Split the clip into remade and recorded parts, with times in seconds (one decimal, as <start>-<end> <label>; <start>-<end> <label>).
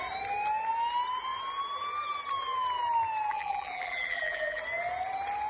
0.0-3.3 recorded; 3.3-4.6 remade; 4.6-5.5 recorded